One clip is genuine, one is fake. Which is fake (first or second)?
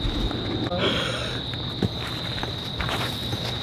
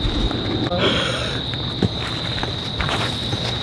second